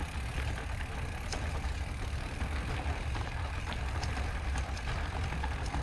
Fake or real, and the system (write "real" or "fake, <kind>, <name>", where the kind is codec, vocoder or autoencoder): fake, vocoder, BigVGAN v2